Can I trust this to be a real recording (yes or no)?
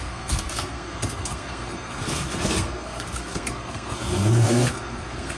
no